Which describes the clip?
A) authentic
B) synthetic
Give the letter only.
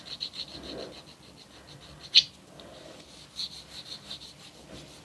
A